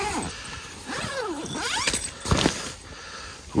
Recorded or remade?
recorded